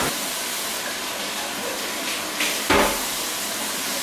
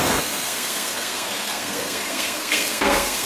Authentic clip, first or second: first